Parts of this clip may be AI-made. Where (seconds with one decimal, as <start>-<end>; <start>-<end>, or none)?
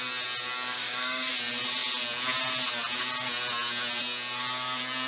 0.7-1.3